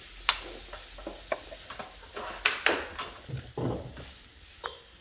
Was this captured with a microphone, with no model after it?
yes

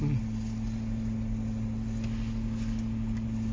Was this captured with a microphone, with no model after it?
yes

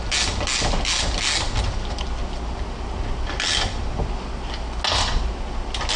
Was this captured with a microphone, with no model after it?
yes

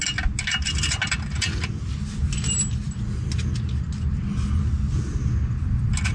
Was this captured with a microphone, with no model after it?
yes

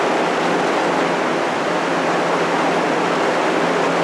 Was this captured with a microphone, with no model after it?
yes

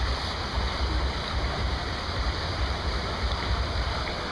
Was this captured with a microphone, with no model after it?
yes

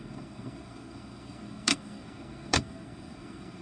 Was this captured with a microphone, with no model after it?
no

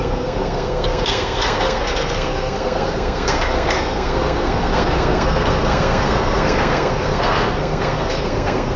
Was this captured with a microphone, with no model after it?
no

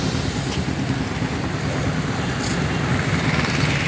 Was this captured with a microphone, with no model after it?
yes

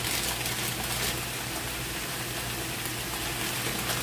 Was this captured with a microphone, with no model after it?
yes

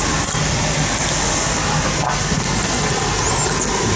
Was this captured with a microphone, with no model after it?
yes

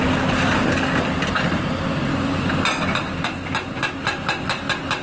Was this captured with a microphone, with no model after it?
yes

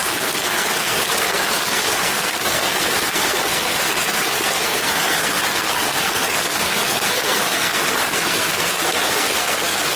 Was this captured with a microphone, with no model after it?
no